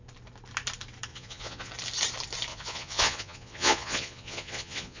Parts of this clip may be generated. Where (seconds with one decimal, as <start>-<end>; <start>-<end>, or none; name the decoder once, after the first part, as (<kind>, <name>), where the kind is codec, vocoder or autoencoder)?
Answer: 1.1-1.7 (vocoder, Vocos); 2.5-5.0